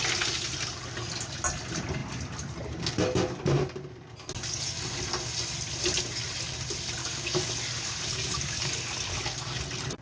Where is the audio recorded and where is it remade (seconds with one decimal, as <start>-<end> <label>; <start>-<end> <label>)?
0.0-7.0 recorded; 7.0-7.5 remade; 7.5-8.1 recorded; 8.1-8.7 remade; 8.7-9.1 recorded; 9.1-9.6 remade; 9.6-10.0 recorded